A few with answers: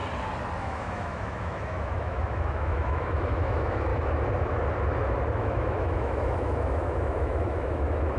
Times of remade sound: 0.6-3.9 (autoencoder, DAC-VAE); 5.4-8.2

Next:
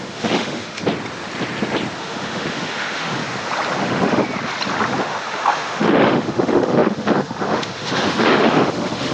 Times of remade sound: 0.0-0.8 (autoencoder, DAC-VAE); 2.0-3.2; 3.8-4.2; 5.0-9.1

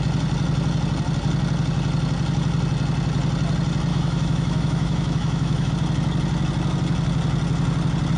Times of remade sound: 3.9-5.7 (autoencoder, DAC-VAE)

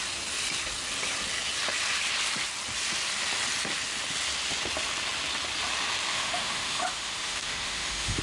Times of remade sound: 6.1-8.2 (autoencoder, DAC-VAE)